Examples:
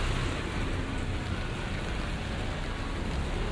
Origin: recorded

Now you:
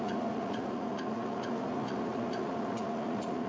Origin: remade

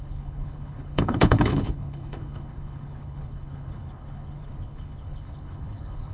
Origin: remade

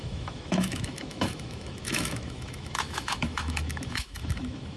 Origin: remade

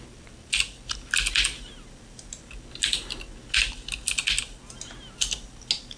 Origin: recorded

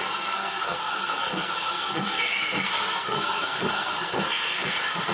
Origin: remade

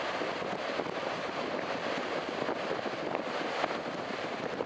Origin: recorded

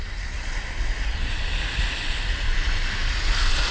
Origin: recorded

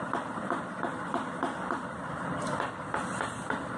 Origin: recorded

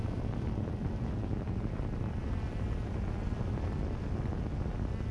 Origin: recorded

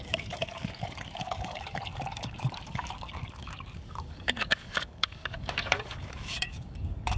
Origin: remade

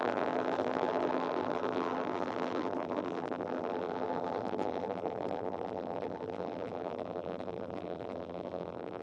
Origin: remade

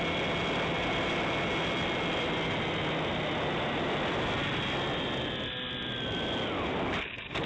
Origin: recorded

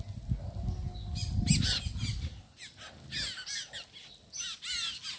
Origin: recorded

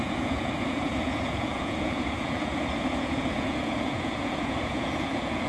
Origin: remade